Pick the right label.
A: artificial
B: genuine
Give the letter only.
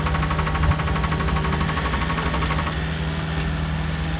B